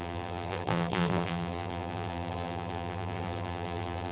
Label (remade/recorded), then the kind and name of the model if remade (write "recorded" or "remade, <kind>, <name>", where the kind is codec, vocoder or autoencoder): remade, vocoder, BigVGAN v2